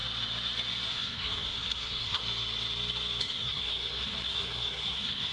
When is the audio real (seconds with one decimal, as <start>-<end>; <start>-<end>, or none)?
0.0-0.9; 2.2-3.2